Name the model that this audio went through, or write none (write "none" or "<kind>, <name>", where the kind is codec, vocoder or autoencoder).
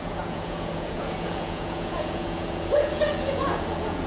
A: vocoder, Vocos